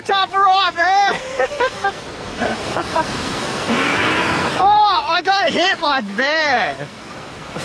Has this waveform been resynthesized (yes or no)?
yes